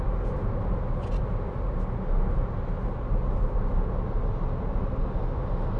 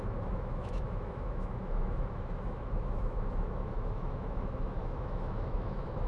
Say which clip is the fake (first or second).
second